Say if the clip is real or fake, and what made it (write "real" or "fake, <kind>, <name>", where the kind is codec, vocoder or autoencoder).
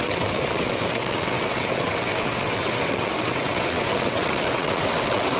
fake, vocoder, WaveNeXt